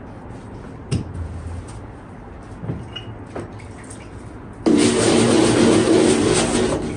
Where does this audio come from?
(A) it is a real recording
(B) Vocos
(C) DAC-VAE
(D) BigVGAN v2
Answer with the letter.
A